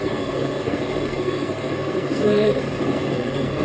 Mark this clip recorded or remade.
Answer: remade